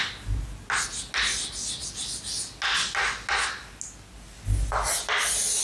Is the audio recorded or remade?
recorded